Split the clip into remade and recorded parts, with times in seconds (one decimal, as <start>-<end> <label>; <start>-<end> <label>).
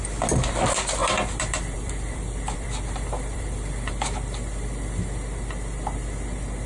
0.0-1.0 recorded; 1.0-5.0 remade; 5.0-6.7 recorded